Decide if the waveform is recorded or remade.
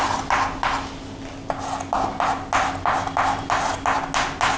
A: recorded